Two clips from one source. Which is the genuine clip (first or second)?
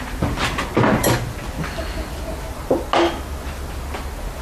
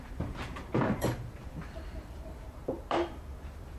first